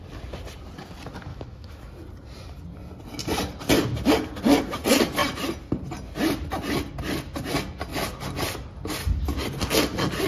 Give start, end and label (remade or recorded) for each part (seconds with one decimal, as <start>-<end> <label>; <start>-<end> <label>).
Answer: 0.0-1.3 recorded; 1.3-1.9 remade; 1.9-10.3 recorded